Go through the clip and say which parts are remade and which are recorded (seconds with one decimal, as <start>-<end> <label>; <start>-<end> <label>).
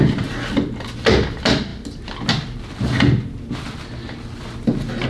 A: 0.0-5.1 recorded